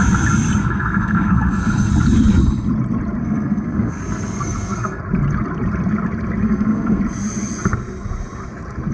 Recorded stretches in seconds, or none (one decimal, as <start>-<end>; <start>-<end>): 0.0-0.6; 1.9-3.2; 5.0-6.4; 7.0-8.9